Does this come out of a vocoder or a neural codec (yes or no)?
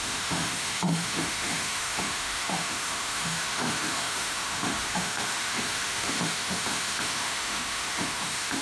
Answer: yes